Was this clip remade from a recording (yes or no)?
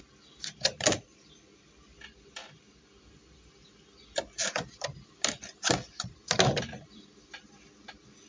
no